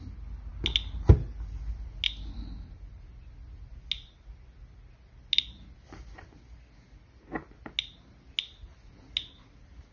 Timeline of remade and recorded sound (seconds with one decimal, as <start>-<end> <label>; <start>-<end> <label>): 0.0-9.9 recorded

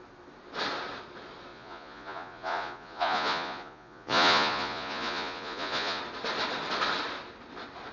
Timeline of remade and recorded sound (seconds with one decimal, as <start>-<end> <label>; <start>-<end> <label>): 0.0-1.5 recorded; 1.5-6.0 remade; 6.0-7.9 recorded

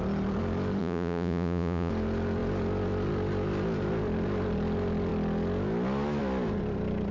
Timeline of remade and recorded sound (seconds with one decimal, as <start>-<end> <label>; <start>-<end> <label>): 0.0-0.8 recorded; 0.8-1.9 remade; 1.9-7.1 recorded

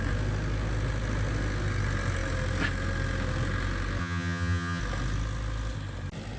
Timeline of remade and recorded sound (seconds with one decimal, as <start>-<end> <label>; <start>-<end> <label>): 0.0-4.0 recorded; 4.0-4.8 remade; 4.8-6.4 recorded

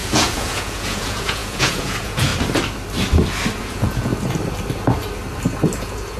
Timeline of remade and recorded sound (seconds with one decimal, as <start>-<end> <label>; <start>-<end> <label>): 0.0-2.3 remade; 2.3-3.6 recorded; 3.6-4.1 remade; 4.1-5.8 recorded; 5.8-6.2 remade